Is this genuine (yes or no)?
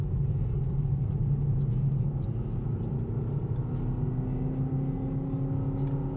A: yes